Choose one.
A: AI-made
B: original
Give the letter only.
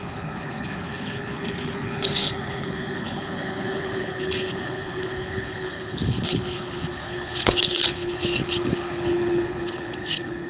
A